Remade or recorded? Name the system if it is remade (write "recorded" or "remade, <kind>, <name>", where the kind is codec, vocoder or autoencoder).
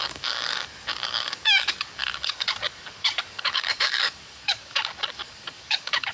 remade, codec, DAC